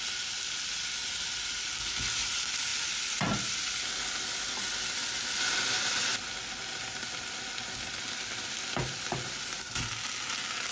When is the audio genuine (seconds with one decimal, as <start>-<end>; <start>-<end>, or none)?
0.0-10.7